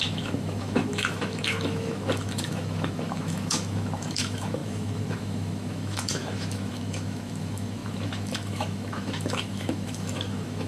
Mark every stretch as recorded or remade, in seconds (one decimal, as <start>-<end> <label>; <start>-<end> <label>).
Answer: 0.0-10.7 remade